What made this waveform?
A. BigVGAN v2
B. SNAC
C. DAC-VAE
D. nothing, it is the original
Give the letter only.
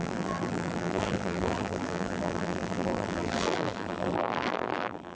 A